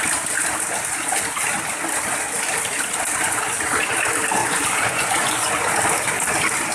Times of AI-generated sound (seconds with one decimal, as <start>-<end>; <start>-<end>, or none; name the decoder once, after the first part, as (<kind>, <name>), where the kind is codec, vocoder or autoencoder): 3.2-3.8 (vocoder, Vocos); 4.4-5.5